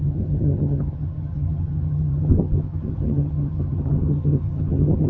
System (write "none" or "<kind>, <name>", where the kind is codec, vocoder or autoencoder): vocoder, HiFi-GAN